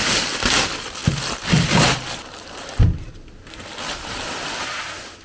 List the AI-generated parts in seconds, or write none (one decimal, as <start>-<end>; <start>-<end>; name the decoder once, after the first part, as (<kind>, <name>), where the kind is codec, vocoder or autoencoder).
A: none

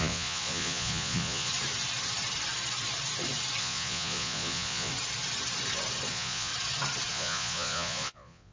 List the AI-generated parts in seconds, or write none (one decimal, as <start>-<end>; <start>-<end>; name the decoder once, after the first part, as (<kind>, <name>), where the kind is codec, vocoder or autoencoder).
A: 0.0-1.5 (vocoder, Vocos); 3.6-4.9; 6.1-6.5; 7.1-8.5

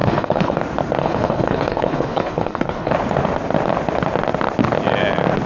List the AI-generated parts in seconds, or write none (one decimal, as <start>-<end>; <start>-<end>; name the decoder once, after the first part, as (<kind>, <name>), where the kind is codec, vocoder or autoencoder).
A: 0.0-0.6 (codec, HILCodec); 1.0-2.9

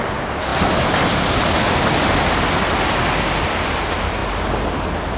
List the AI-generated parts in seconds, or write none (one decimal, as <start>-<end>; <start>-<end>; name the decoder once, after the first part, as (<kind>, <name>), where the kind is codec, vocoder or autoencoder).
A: none

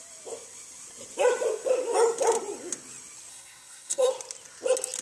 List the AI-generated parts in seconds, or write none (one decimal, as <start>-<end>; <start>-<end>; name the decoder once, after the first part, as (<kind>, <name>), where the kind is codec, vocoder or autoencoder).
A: 3.3-4.1 (codec, SNAC)

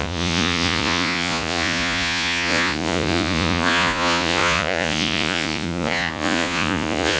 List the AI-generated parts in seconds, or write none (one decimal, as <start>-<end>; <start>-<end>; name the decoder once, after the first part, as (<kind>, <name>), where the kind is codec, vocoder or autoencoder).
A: 0.0-7.2 (vocoder, Vocos)